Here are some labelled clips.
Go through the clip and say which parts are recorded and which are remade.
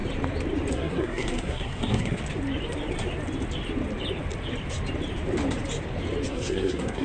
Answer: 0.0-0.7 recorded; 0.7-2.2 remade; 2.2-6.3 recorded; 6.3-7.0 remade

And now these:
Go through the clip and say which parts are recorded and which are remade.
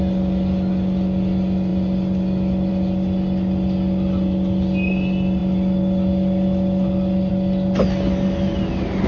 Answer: 0.0-9.1 recorded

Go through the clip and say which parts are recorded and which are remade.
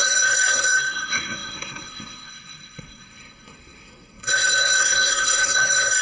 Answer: 0.0-6.0 remade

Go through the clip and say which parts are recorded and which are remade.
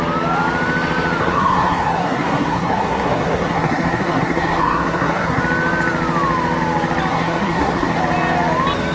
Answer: 0.0-1.2 recorded; 1.2-5.4 remade; 5.4-7.1 recorded; 7.1-8.0 remade; 8.0-8.9 recorded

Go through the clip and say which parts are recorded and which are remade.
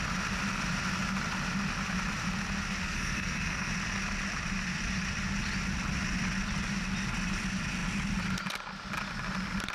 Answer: 0.0-2.8 recorded; 2.8-3.7 remade; 3.7-9.7 recorded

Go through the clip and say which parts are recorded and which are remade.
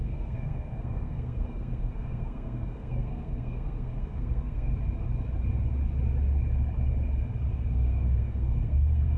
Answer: 0.0-4.7 remade; 4.7-7.5 recorded; 7.5-9.2 remade